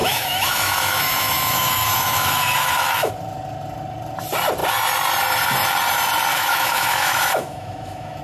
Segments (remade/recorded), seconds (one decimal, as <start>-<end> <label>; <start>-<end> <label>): 0.0-3.1 remade; 3.1-6.3 recorded; 6.3-8.2 remade